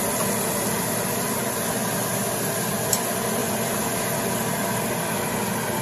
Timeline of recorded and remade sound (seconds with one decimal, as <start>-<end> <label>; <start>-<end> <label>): 0.0-1.4 remade; 1.4-2.2 recorded; 2.2-5.8 remade